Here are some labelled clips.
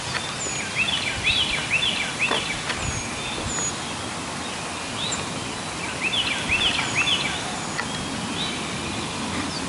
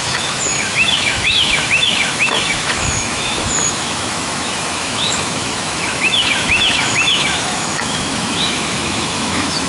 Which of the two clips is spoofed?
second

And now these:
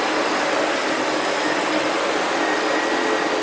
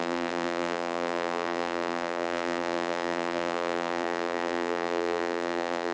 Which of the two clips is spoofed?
second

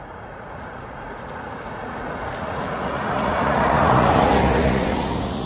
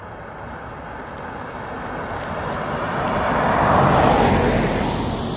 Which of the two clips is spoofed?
first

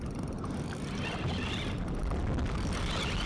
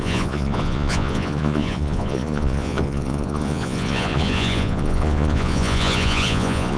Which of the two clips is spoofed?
second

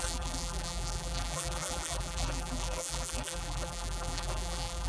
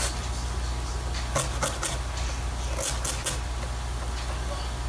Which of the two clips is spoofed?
first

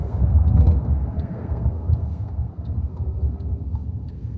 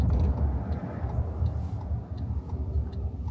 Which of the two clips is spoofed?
first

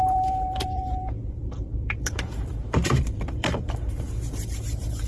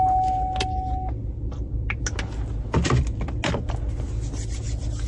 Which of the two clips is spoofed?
first